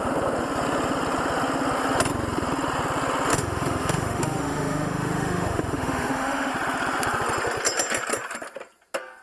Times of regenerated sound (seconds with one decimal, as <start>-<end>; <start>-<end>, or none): 3.3-6.5